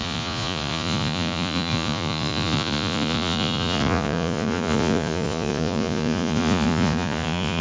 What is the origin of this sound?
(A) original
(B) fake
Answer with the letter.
B